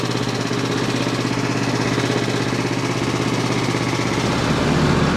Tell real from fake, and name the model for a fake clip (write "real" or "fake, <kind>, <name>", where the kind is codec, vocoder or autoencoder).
real